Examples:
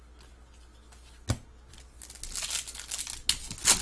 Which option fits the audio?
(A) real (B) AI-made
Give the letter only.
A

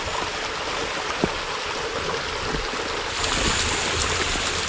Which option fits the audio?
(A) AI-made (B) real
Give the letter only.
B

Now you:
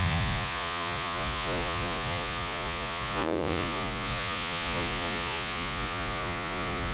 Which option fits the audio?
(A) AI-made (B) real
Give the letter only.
A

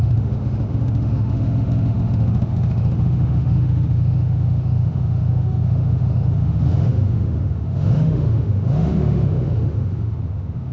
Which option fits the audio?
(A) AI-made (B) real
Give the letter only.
A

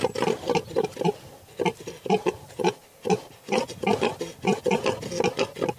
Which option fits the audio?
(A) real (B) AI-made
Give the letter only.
A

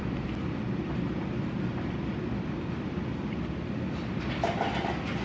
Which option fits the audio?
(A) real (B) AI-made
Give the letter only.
A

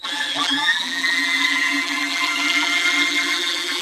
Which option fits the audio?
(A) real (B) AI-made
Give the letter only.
B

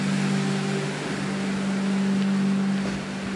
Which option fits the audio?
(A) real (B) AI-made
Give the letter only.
A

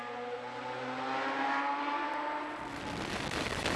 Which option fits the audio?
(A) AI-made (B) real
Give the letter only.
B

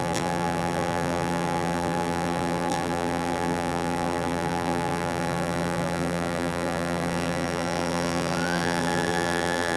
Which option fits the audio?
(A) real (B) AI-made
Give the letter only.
B